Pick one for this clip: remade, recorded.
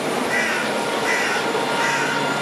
recorded